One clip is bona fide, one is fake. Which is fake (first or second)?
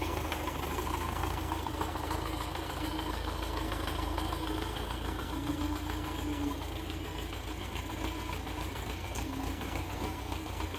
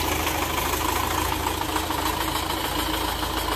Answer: first